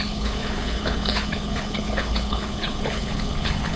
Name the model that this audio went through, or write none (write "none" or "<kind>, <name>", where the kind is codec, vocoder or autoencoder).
codec, HILCodec